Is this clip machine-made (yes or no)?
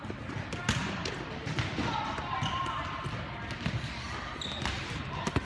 no